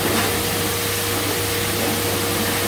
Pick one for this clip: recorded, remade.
recorded